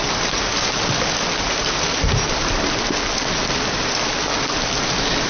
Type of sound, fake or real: real